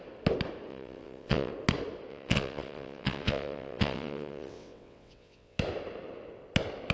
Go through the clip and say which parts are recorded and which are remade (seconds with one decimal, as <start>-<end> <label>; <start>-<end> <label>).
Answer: 0.0-0.7 recorded; 0.7-1.5 remade; 1.5-2.1 recorded; 2.1-5.6 remade; 5.6-6.9 recorded